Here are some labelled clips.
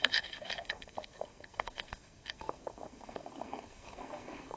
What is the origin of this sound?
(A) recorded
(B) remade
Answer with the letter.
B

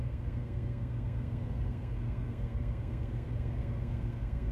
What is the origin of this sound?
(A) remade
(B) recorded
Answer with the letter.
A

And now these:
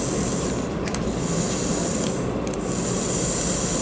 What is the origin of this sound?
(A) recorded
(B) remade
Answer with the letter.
A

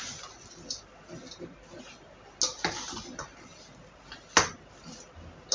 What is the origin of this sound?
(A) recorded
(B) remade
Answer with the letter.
A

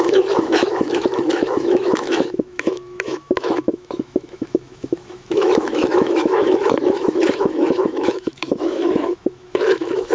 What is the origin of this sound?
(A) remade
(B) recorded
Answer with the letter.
A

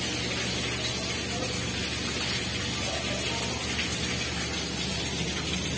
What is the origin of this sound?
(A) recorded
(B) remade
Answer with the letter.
A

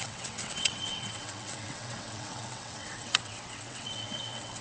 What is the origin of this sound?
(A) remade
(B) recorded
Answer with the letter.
A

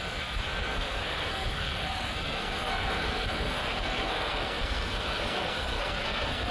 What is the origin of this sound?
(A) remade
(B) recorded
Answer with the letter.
A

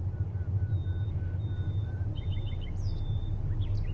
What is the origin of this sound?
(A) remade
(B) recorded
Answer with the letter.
B